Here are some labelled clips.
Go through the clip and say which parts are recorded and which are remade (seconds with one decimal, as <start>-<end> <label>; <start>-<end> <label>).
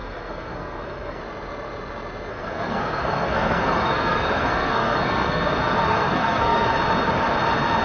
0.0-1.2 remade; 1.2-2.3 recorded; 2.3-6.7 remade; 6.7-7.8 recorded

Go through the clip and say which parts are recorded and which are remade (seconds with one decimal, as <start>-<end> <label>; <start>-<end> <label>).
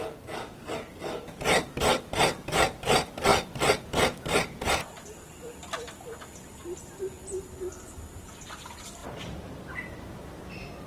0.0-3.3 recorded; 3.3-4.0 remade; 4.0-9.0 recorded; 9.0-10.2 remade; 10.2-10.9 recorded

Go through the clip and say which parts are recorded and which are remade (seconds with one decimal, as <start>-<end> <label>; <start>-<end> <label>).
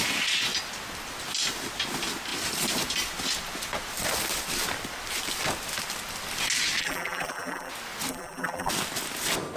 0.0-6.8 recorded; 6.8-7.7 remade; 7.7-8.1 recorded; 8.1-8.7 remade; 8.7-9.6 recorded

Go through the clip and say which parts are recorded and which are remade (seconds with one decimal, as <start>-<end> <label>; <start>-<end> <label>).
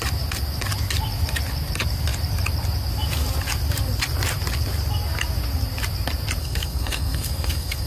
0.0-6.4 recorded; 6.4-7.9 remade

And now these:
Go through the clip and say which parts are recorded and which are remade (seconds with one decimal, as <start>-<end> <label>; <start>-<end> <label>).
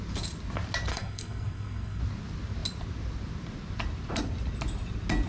0.0-0.9 recorded; 0.9-2.0 remade; 2.0-5.3 recorded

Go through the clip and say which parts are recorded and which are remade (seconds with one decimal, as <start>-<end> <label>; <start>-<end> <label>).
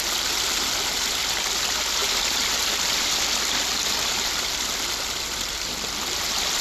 0.0-2.0 recorded; 2.0-5.7 remade; 5.7-6.6 recorded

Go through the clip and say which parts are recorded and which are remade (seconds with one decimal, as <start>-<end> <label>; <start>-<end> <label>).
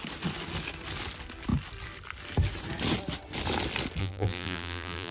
0.0-4.0 recorded; 4.0-5.1 remade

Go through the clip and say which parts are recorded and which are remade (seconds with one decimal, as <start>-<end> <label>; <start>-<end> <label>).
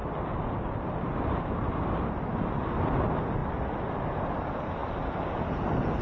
0.0-6.0 recorded